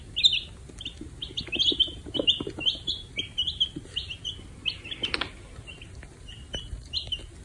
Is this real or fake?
real